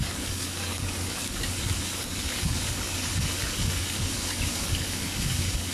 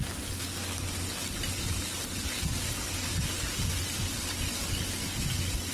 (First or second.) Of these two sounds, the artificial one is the first